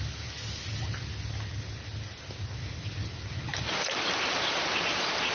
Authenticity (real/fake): real